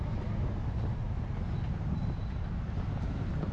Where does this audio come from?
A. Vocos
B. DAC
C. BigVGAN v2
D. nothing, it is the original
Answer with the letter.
D